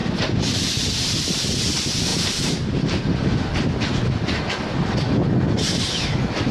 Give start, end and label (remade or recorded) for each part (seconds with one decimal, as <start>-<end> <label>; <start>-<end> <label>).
0.0-3.5 remade; 3.5-5.5 recorded; 5.5-6.5 remade